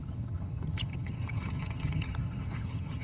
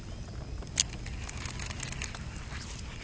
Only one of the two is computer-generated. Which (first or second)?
first